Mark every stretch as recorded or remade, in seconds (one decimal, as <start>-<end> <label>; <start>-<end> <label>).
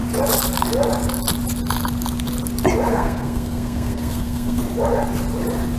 0.0-2.9 recorded; 2.9-4.6 remade; 4.6-5.8 recorded